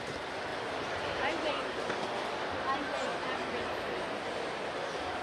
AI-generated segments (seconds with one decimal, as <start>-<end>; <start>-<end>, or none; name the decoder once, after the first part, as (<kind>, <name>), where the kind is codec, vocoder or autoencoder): 0.5-1.5 (vocoder, BigVGAN v2); 3.1-3.8